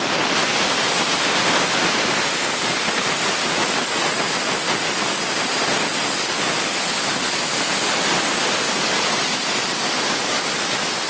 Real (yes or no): yes